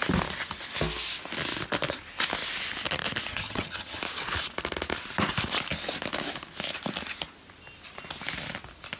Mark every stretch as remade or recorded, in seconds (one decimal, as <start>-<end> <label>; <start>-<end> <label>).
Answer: 0.0-3.3 recorded; 3.3-4.0 remade; 4.0-9.0 recorded